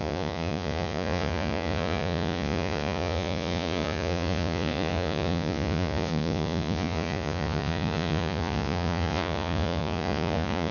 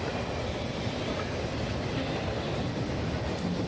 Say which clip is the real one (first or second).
second